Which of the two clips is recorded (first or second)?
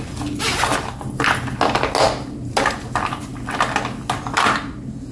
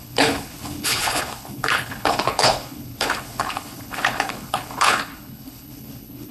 first